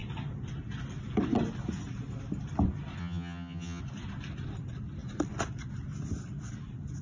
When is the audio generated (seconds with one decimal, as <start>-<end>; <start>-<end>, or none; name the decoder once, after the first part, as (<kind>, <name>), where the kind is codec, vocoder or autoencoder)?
3.0-3.8 (vocoder, HiFi-GAN)